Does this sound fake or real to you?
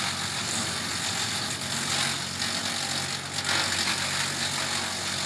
real